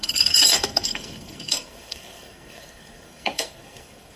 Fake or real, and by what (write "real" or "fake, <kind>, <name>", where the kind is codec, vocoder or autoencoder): fake, codec, SNAC